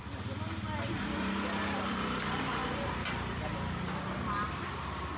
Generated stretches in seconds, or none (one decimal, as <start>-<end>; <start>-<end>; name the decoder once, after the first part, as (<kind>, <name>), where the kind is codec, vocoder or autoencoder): none